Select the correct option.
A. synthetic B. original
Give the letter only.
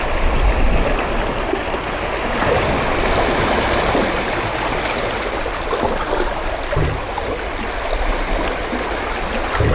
B